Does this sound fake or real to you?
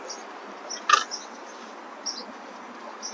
real